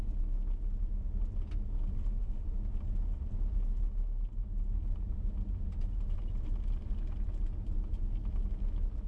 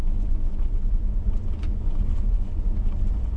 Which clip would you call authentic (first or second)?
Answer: first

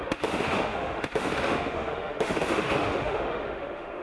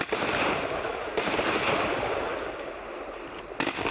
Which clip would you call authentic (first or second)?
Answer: second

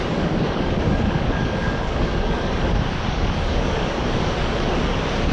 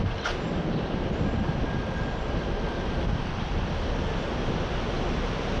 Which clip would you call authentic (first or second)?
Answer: second